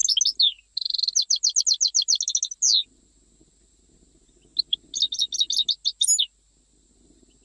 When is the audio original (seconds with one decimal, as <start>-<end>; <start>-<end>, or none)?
0.0-7.4